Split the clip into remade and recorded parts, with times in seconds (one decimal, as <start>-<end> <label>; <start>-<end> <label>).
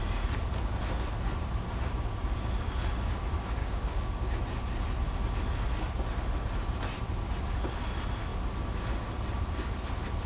0.0-3.6 recorded; 3.6-4.4 remade; 4.4-10.3 recorded